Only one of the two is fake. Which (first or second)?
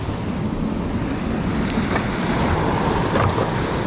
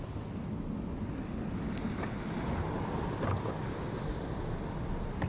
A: first